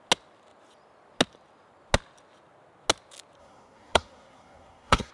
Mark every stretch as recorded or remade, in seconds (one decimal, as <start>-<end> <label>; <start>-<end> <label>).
0.0-3.4 recorded; 3.4-5.1 remade